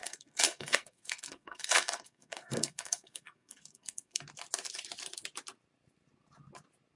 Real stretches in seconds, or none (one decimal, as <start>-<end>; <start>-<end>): 4.2-7.0